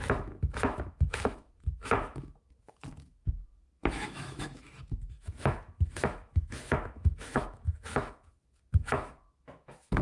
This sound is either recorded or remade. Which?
remade